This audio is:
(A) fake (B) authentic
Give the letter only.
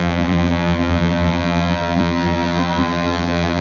A